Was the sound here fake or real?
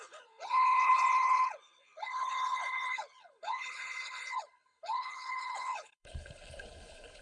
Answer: fake